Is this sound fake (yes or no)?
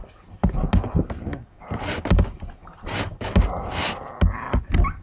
no